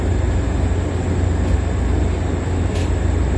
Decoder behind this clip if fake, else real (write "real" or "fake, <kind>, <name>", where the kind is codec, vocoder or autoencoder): real